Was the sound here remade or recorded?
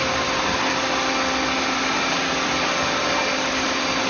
recorded